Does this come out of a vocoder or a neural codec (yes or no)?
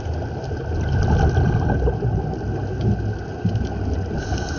no